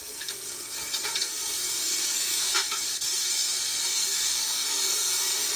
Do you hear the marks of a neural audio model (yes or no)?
yes